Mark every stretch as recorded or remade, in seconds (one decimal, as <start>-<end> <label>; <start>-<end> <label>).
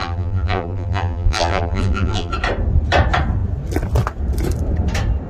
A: 0.0-2.3 remade; 2.3-5.3 recorded